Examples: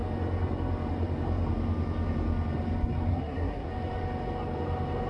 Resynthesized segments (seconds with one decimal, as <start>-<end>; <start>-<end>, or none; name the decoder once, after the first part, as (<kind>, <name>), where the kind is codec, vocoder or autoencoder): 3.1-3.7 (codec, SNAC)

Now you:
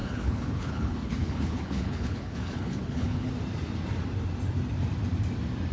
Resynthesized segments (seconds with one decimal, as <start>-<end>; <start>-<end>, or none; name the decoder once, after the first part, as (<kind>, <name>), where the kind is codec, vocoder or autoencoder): 0.0-3.3 (codec, HILCodec)

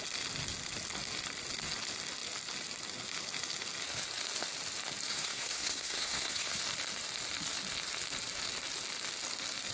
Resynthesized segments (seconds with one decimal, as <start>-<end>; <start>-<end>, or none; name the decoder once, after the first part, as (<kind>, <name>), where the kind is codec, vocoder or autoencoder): 5.1-6.6 (codec, SNAC)

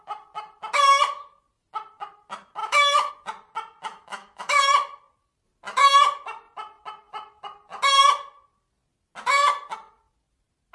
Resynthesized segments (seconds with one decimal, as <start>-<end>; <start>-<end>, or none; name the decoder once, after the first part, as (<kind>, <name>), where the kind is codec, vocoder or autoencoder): 2.6-3.1 (autoencoder, DAC-VAE); 3.9-4.7

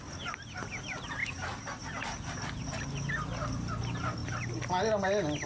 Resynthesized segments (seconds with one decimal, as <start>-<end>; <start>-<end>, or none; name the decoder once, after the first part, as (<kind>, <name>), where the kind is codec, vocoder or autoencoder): none

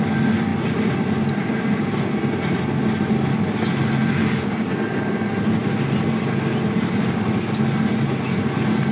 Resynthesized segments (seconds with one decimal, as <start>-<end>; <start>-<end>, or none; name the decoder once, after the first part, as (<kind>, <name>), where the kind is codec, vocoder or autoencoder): none

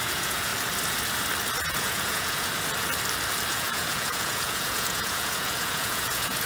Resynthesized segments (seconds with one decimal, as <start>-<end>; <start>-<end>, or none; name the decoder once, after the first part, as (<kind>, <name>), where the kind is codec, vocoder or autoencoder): 0.0-0.5 (vocoder, Vocos); 1.6-2.5; 3.5-6.5